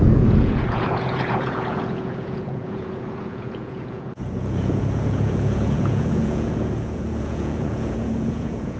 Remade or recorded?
remade